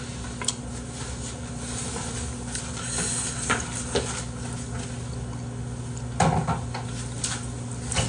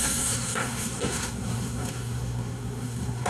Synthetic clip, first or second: second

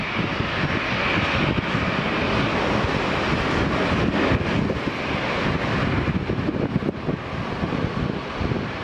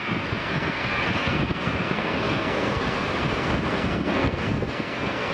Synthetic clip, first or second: second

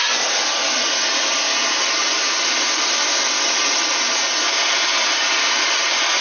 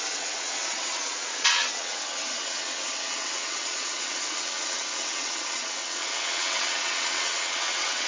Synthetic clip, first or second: second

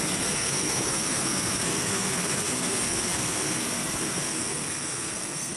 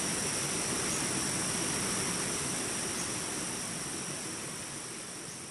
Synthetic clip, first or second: first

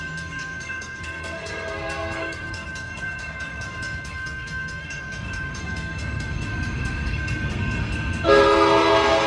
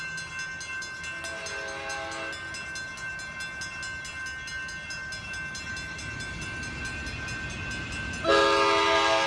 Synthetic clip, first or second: first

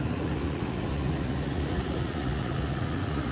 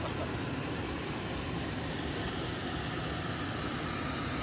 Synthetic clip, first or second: first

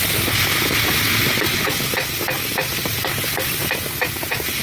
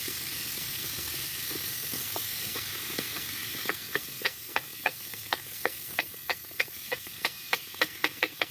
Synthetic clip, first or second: second